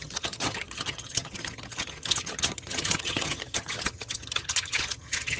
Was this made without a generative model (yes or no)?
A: no